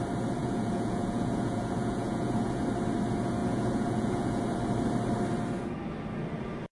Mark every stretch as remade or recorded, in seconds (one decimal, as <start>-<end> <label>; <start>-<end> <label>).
0.0-0.4 recorded; 0.4-2.6 remade; 2.6-3.4 recorded; 3.4-4.4 remade; 4.4-6.7 recorded